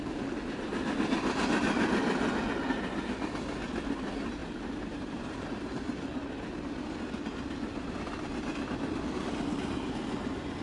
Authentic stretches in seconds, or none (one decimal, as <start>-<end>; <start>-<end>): 0.0-4.4; 5.7-10.6

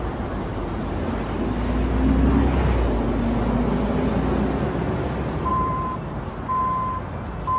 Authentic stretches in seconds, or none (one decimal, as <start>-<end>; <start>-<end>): 0.0-5.5; 6.3-7.6

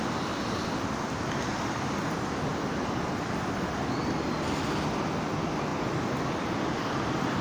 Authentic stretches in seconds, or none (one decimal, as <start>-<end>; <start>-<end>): 0.0-7.4

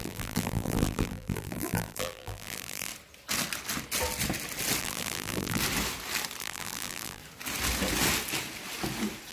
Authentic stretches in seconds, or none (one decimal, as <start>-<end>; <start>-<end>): 2.9-4.8; 5.6-6.4; 7.2-9.3

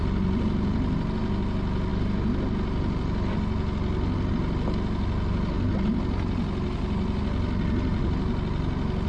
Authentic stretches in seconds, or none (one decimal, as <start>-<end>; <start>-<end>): 0.0-9.1